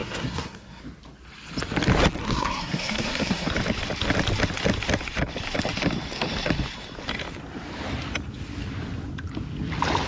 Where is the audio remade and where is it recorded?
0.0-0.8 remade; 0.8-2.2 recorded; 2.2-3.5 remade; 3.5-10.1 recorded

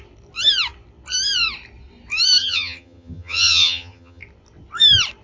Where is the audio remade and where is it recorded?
0.0-2.4 recorded; 2.4-4.2 remade; 4.2-5.2 recorded

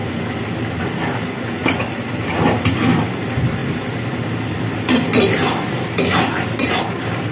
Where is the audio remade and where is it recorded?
0.0-7.3 recorded